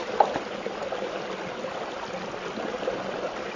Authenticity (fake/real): real